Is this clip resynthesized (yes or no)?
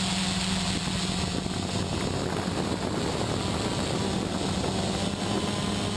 no